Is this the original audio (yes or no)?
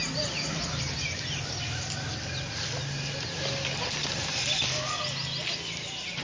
yes